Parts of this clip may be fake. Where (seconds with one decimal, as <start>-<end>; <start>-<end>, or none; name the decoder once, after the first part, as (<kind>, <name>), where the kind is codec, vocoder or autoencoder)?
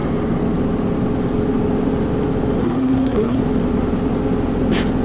2.6-3.4 (codec, SNAC)